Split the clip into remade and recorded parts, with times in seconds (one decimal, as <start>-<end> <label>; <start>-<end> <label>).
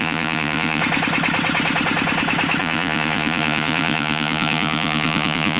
0.0-0.8 remade; 0.8-2.6 recorded; 2.6-5.6 remade